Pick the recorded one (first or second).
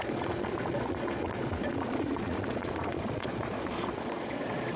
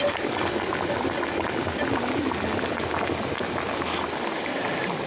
second